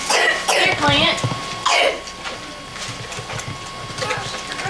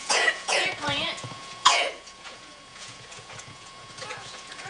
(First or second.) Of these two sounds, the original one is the first